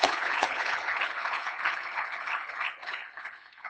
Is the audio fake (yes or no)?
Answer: yes